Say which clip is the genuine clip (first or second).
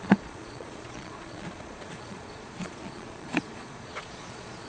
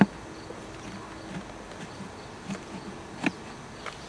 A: second